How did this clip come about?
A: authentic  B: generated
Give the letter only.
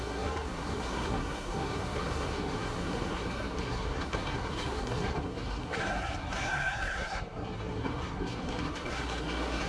B